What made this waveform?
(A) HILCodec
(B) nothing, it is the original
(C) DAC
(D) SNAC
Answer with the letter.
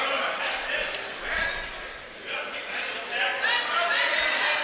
B